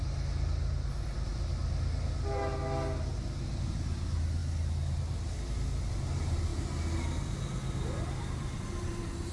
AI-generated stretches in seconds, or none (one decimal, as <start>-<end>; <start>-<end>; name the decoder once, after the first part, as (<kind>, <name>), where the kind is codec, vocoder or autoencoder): none